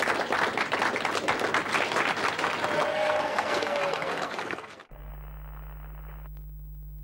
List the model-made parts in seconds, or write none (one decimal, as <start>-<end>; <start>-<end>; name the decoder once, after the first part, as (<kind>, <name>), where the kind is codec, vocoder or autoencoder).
2.9-5.1 (codec, SNAC)